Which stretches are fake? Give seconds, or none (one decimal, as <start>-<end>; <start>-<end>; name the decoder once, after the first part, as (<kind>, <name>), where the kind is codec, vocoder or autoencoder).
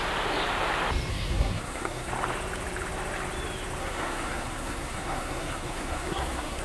1.1-2.1 (codec, SNAC); 3.8-6.6